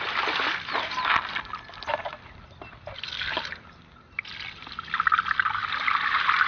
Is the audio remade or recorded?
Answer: recorded